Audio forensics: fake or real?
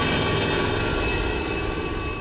real